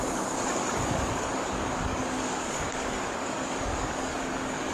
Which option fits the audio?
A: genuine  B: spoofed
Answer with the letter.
B